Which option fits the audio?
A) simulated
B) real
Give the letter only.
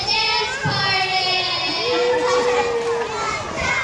B